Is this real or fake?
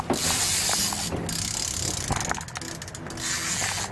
real